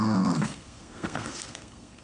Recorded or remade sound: remade